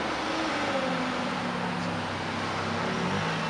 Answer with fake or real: real